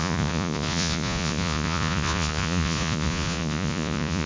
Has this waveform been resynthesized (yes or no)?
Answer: yes